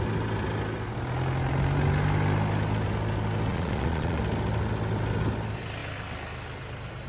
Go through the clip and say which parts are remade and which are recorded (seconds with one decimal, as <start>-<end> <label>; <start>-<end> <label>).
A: 0.0-3.5 recorded; 3.5-4.2 remade; 4.2-7.1 recorded